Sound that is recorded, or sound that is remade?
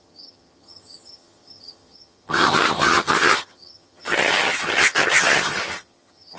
remade